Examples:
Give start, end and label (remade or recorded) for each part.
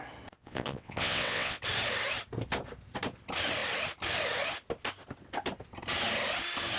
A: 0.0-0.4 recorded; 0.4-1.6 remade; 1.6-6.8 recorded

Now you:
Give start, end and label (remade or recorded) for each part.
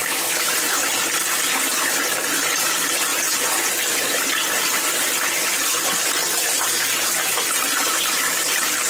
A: 0.0-0.5 remade; 0.5-8.9 recorded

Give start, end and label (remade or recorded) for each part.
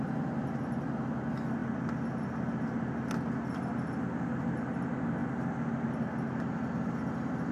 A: 0.0-7.5 recorded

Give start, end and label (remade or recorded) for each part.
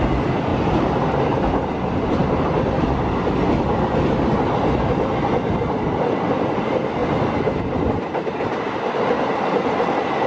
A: 0.0-10.3 recorded